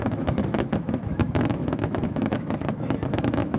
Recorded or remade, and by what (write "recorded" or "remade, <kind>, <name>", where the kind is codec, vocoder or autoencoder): remade, autoencoder, DAC-VAE